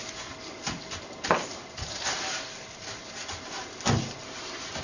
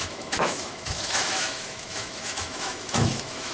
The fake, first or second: second